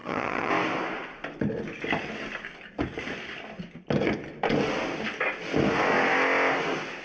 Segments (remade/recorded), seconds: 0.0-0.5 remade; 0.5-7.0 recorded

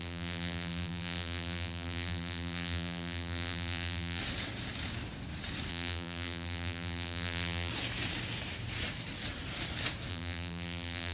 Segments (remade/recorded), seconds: 0.0-4.2 remade; 4.2-5.7 recorded; 5.7-7.7 remade; 7.7-10.1 recorded; 10.1-11.1 remade

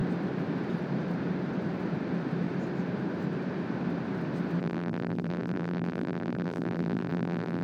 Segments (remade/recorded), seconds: 0.0-4.6 recorded; 4.6-7.6 remade

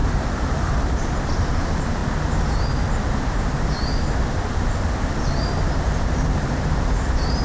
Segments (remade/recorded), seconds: 0.0-2.0 remade; 2.0-5.8 recorded; 5.8-7.4 remade

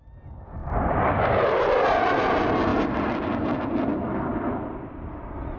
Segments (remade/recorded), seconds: 0.0-0.6 recorded; 0.6-1.2 remade; 1.2-2.7 recorded; 2.7-5.1 remade; 5.1-5.6 recorded

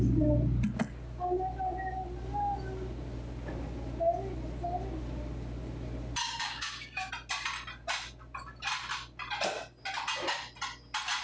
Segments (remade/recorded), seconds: 0.0-6.2 recorded; 6.2-7.1 remade; 7.1-11.2 recorded

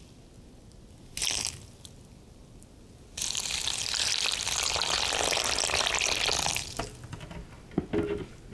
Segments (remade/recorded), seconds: 0.0-2.4 recorded; 2.4-5.9 remade; 5.9-8.5 recorded

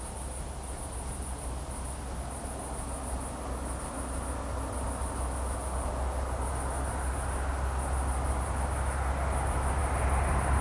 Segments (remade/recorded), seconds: 0.0-10.6 recorded